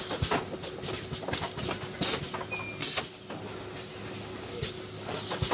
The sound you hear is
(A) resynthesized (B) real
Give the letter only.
B